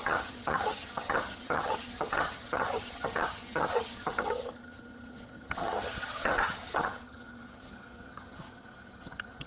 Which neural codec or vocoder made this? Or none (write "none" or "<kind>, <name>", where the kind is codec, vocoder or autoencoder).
vocoder, HiFi-GAN